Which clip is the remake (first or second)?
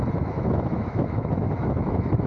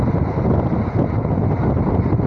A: first